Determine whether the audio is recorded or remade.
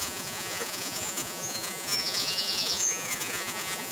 remade